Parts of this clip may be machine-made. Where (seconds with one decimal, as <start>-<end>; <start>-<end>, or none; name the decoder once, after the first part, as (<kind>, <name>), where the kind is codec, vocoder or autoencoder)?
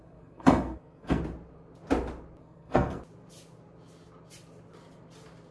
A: 0.0-1.2 (codec, SNAC); 2.4-3.0